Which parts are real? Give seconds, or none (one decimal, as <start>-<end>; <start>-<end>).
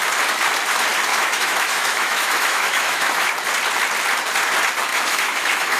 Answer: 0.0-1.1; 3.3-4.9